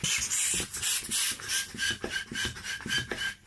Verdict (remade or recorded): recorded